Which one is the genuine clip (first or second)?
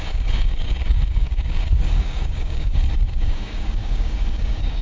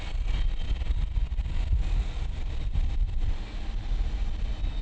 second